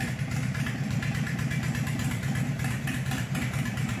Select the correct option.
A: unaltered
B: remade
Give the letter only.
B